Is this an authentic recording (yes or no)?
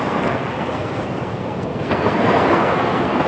no